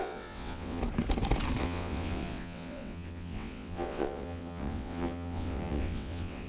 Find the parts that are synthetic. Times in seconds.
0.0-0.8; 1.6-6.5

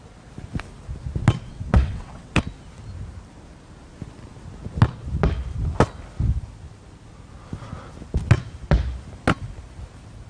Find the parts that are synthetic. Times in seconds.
1.5-2.3